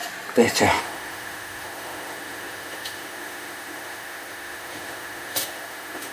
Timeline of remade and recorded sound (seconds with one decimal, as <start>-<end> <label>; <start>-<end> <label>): 0.0-0.8 recorded; 0.8-6.1 remade